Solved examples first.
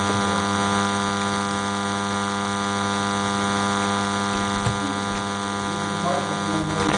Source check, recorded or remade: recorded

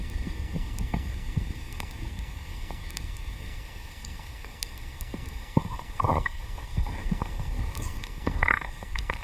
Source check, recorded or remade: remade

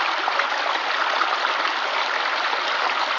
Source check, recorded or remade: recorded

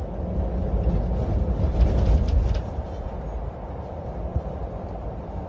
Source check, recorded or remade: recorded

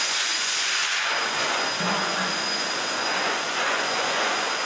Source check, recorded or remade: remade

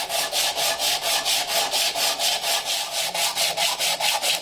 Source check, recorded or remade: recorded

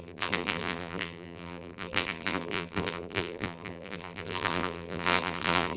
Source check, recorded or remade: remade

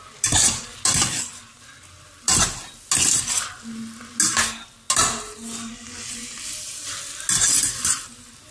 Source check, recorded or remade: recorded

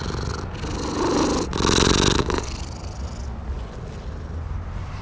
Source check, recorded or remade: recorded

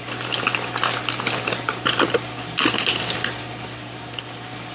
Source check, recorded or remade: recorded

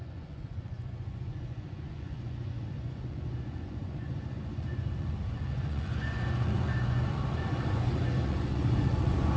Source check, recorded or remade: remade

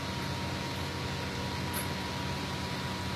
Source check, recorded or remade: recorded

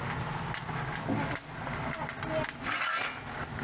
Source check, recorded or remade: recorded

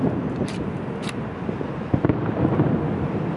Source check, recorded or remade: recorded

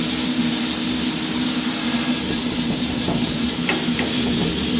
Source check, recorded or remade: recorded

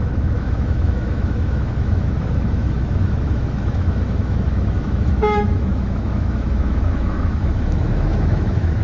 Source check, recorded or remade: remade